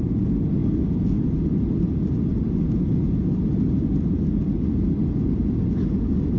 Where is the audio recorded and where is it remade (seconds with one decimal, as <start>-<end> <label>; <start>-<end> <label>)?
0.0-6.4 recorded